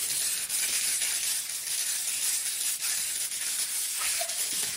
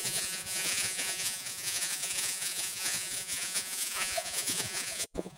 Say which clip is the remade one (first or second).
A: second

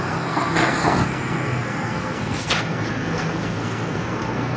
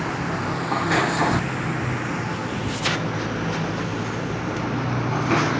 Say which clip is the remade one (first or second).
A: first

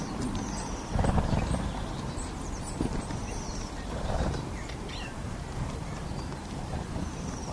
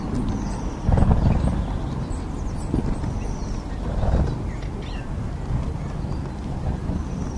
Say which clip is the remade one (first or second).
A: first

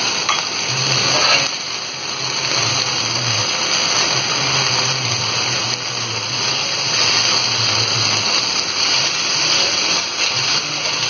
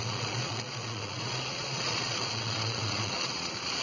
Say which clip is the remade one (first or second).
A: second